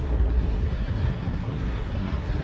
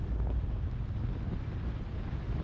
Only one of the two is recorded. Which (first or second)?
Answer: second